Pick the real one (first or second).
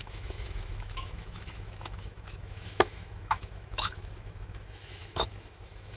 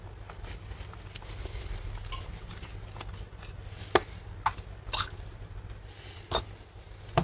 second